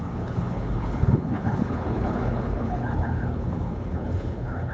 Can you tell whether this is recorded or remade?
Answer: remade